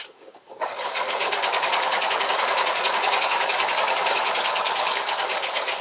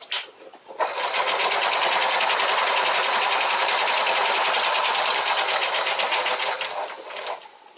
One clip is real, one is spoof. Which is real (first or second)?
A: second